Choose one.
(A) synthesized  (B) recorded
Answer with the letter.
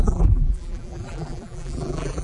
A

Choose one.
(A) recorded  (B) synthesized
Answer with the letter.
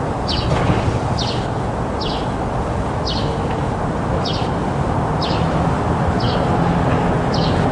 A